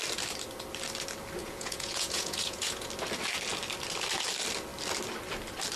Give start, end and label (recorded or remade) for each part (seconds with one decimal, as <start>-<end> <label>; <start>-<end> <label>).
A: 0.0-1.4 recorded; 1.4-2.9 remade; 2.9-5.8 recorded